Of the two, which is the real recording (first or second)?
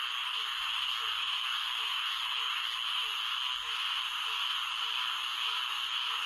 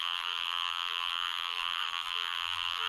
first